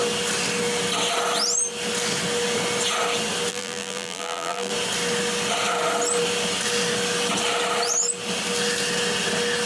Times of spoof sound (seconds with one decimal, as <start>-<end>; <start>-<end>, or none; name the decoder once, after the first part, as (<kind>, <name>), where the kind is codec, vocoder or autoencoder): 3.5-4.7 (vocoder, BigVGAN v2)

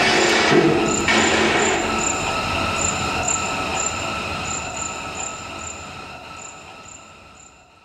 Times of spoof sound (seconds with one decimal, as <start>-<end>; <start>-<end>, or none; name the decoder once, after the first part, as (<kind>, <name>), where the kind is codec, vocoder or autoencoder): 3.7-4.8 (vocoder, BigVGAN v2)

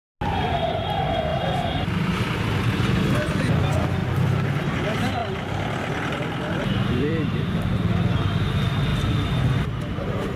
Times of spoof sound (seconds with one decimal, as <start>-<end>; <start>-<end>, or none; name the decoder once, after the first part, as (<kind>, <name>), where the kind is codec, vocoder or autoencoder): 1.3-2.1 (vocoder, BigVGAN v2); 5.2-7.5; 8.9-9.4

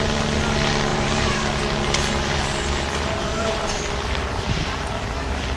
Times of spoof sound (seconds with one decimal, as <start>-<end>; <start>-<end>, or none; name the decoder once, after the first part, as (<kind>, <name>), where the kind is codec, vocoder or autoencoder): 0.9-1.6 (vocoder, BigVGAN v2); 3.3-5.1

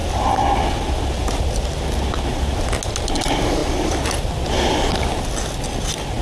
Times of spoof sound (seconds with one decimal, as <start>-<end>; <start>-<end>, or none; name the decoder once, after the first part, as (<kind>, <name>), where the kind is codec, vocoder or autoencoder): none

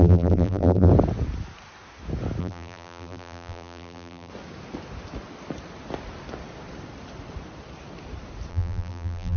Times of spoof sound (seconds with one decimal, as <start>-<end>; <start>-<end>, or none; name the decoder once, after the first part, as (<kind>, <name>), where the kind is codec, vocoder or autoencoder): 0.0-0.9 (vocoder, BigVGAN v2); 2.4-4.3; 8.5-9.4

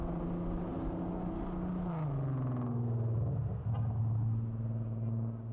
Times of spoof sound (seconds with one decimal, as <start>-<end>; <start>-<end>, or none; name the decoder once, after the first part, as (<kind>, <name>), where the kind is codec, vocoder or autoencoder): none